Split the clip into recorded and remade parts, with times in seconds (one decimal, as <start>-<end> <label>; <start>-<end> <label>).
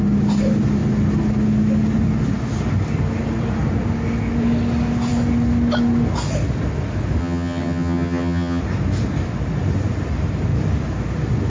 0.0-7.2 recorded; 7.2-8.6 remade; 8.6-11.5 recorded